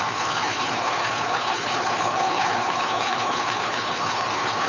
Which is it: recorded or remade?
remade